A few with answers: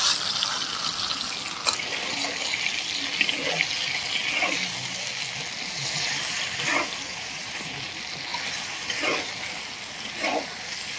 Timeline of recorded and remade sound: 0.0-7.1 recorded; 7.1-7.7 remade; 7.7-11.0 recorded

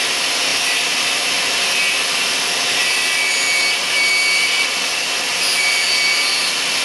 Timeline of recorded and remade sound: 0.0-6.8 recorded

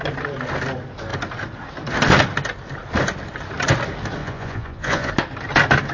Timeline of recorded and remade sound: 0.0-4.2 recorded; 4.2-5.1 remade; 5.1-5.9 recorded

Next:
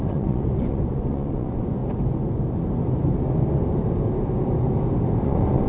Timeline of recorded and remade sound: 0.0-1.8 remade; 1.8-5.2 recorded; 5.2-5.7 remade

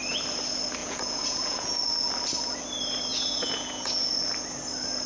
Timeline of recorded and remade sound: 0.0-0.8 recorded; 0.8-1.8 remade; 1.8-3.1 recorded; 3.1-4.1 remade; 4.1-5.1 recorded

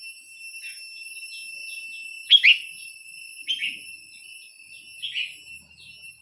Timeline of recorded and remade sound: 0.0-6.2 recorded